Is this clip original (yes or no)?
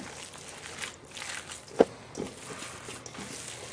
yes